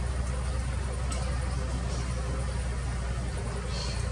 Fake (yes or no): no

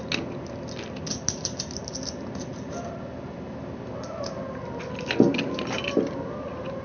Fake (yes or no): no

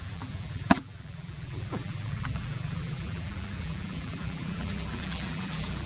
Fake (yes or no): yes